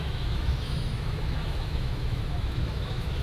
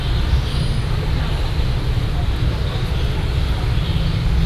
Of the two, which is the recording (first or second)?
second